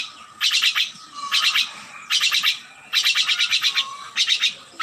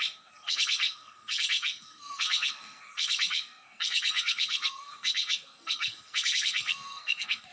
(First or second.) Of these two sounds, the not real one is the second